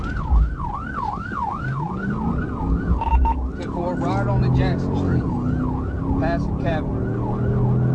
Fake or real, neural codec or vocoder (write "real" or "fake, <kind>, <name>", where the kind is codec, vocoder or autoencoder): real